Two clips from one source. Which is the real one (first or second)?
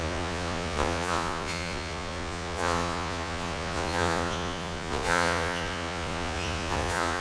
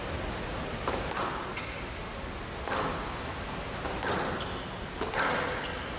second